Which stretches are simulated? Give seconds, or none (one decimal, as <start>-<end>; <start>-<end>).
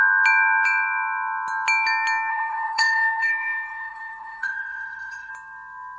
2.3-5.3